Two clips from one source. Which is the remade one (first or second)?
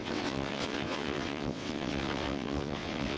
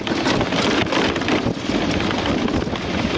first